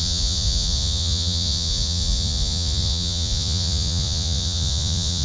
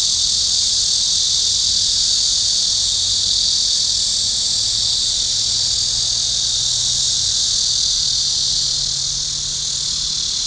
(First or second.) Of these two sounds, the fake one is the first